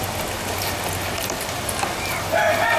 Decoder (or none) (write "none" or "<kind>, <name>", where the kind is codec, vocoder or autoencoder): none